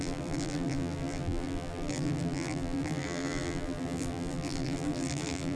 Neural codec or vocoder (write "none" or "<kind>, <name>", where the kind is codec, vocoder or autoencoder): vocoder, BigVGAN v2